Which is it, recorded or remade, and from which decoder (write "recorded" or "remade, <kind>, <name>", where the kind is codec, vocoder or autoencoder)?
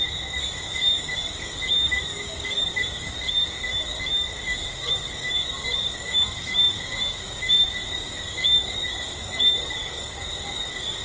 remade, codec, DAC